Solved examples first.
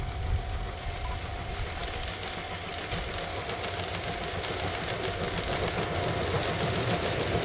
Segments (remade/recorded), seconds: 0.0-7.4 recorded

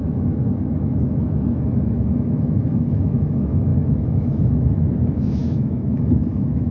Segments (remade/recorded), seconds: 0.0-6.7 remade

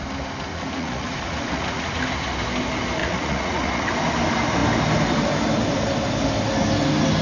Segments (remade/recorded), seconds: 0.0-0.5 recorded; 0.5-2.0 remade; 2.0-3.0 recorded; 3.0-3.9 remade; 3.9-7.2 recorded

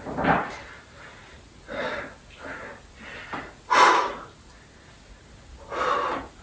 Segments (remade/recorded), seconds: 0.0-6.4 recorded